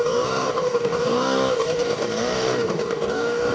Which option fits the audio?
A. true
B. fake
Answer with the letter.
B